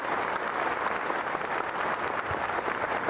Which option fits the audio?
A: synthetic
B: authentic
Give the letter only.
B